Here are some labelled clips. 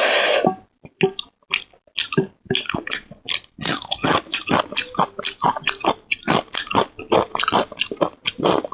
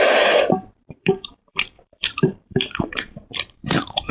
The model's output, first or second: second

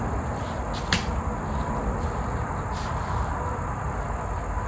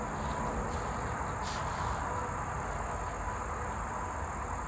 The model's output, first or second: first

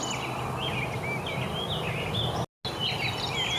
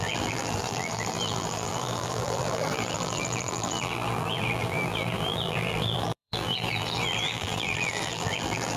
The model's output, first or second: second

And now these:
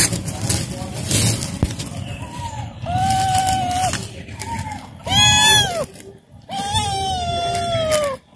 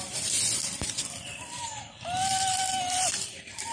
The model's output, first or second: second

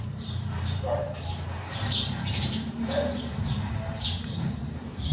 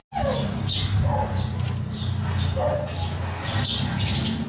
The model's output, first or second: first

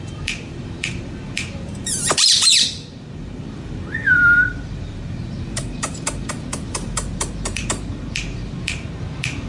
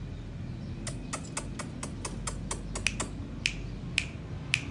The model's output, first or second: first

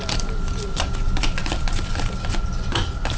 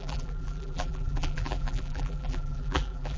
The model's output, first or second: second